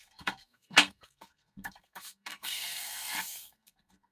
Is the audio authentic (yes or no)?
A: no